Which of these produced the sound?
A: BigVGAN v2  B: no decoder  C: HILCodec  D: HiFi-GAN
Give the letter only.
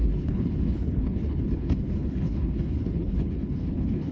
C